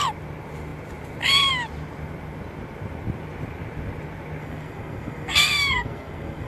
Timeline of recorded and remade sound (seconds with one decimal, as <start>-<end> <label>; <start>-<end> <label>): 0.0-4.4 recorded; 4.4-6.5 remade